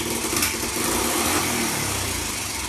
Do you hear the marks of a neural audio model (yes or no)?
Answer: yes